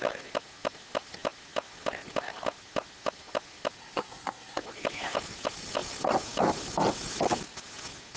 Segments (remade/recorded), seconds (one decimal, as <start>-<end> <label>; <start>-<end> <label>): 0.0-3.8 recorded; 3.8-4.6 remade; 4.6-8.2 recorded